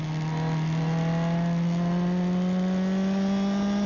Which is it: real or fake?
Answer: real